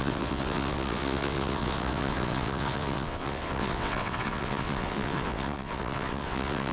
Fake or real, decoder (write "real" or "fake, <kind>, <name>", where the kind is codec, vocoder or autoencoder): fake, vocoder, WaveNeXt